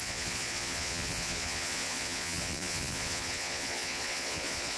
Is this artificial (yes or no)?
yes